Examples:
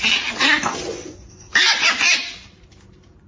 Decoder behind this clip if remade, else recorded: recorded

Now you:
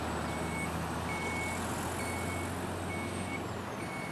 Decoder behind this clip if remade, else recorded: recorded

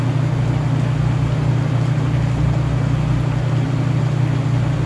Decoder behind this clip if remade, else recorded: recorded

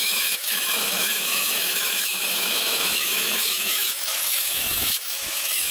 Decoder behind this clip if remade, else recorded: remade, autoencoder, DAC-VAE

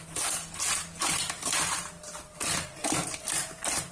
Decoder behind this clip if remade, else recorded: recorded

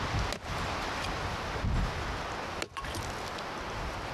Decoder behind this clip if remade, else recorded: recorded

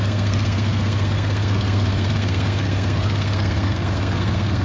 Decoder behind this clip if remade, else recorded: remade, codec, SNAC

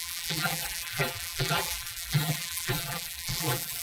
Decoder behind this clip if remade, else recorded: remade, vocoder, BigVGAN v2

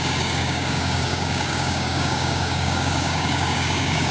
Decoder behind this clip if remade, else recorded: remade, codec, DAC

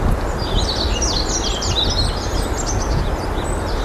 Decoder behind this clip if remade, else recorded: recorded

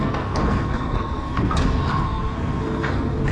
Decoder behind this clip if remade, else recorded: remade, codec, SNAC